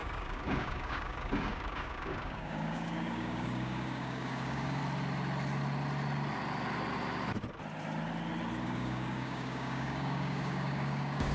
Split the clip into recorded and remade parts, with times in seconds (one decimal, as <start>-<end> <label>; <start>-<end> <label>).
0.0-4.8 remade; 4.8-8.6 recorded; 8.6-11.3 remade

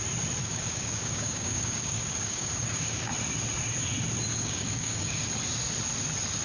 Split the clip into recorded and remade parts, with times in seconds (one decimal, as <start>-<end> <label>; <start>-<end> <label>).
0.0-0.4 recorded; 0.4-3.1 remade; 3.1-4.3 recorded; 4.3-5.3 remade; 5.3-6.4 recorded

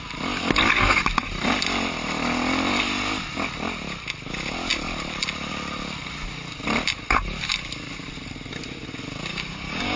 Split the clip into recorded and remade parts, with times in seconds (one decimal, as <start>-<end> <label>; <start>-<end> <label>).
0.0-9.3 recorded; 9.3-10.0 remade

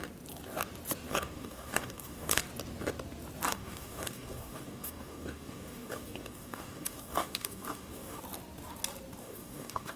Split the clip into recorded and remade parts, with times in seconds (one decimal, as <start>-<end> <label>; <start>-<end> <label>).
0.0-1.1 recorded; 1.1-2.4 remade; 2.4-3.5 recorded; 3.5-8.2 remade; 8.2-9.2 recorded; 9.2-10.0 remade

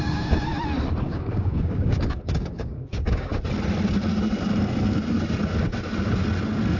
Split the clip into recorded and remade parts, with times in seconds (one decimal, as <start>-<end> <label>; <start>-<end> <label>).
0.0-0.5 remade; 0.5-1.0 recorded; 1.0-3.3 remade; 3.3-6.8 recorded

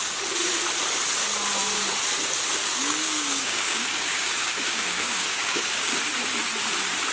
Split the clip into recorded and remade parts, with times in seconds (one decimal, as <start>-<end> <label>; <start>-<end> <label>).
0.0-2.6 recorded; 2.6-6.0 remade; 6.0-7.1 recorded

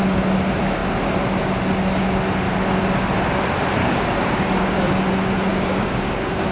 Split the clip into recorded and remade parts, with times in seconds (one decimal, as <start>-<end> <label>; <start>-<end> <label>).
0.0-3.8 recorded; 3.8-4.8 remade; 4.8-5.5 recorded; 5.5-6.5 remade